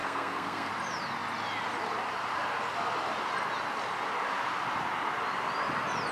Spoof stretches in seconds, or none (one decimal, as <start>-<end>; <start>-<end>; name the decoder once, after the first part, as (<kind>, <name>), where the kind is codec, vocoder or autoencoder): 0.0-0.7 (codec, SNAC)